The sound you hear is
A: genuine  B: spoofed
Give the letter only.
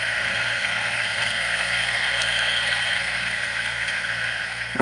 B